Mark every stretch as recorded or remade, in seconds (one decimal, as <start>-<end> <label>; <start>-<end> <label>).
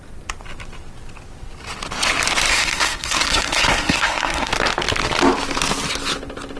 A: 0.0-2.5 recorded; 2.5-4.5 remade; 4.5-6.6 recorded